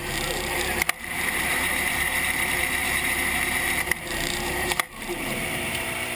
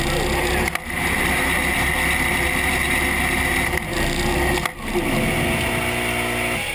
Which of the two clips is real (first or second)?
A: second